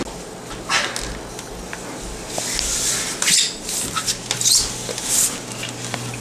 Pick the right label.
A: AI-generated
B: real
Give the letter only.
B